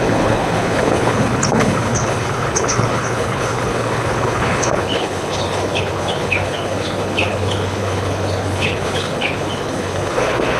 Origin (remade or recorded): remade